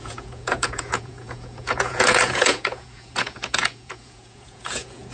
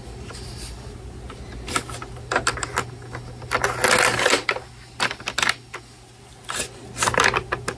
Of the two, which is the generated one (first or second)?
first